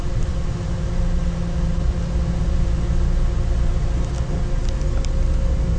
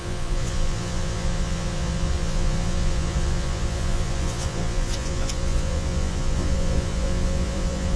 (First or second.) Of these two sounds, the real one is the first